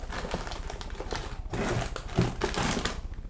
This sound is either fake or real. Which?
real